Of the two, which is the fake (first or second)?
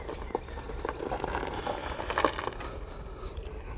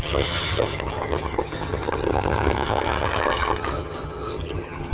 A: second